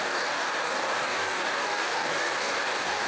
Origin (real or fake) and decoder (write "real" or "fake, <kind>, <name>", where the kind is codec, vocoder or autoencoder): fake, codec, DAC